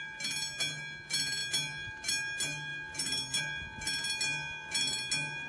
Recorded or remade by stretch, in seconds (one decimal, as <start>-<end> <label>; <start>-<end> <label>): 0.0-5.5 recorded